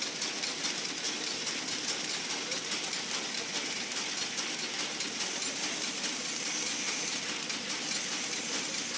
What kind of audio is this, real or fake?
real